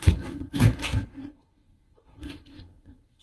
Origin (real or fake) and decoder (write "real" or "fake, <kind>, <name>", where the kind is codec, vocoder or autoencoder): fake, codec, SNAC